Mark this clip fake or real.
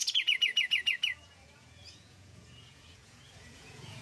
fake